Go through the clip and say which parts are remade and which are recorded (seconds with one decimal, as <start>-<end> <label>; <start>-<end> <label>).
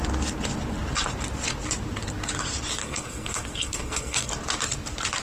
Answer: 0.0-2.8 recorded; 2.8-4.3 remade; 4.3-5.2 recorded